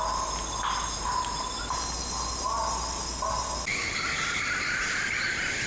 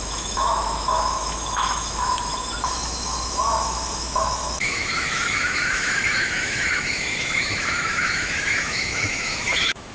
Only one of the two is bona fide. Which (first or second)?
first